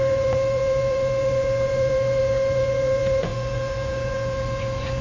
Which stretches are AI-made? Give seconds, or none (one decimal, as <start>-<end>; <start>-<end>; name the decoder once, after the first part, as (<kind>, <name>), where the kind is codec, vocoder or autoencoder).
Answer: 0.0-5.0 (vocoder, Vocos)